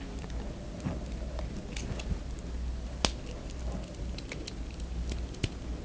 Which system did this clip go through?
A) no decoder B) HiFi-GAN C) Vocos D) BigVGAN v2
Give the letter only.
A